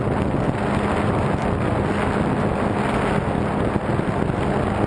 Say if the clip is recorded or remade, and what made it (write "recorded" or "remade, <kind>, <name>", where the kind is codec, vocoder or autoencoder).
recorded